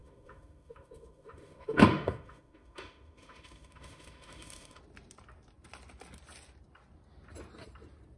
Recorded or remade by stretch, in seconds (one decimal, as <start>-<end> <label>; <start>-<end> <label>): 0.0-4.8 remade; 4.8-8.2 recorded